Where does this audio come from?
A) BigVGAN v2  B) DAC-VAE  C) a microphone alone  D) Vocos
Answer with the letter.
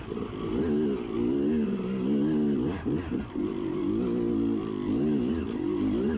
C